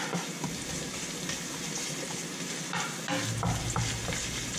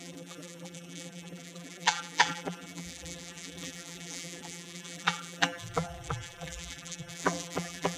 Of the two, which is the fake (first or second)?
second